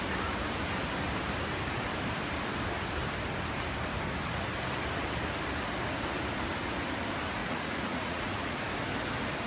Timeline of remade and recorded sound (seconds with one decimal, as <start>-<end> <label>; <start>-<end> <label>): 0.0-7.4 recorded; 7.4-8.6 remade; 8.6-9.5 recorded